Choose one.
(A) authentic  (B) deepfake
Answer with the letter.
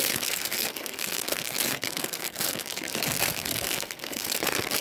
B